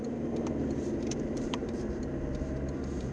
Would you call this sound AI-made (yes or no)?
yes